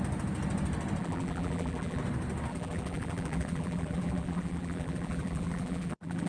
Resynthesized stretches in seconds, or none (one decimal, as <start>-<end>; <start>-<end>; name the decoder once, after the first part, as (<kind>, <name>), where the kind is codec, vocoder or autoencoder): 1.0-2.0 (vocoder, BigVGAN v2); 2.5-6.3